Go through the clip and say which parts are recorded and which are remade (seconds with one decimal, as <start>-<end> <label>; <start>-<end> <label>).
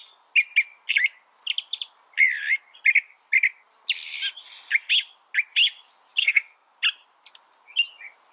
0.0-6.2 recorded; 6.2-6.7 remade; 6.7-8.3 recorded